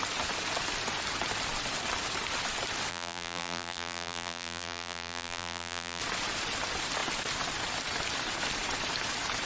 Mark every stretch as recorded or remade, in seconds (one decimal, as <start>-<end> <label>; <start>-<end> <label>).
0.0-2.9 recorded; 2.9-6.0 remade; 6.0-9.5 recorded